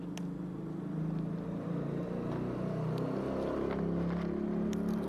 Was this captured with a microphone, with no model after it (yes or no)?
yes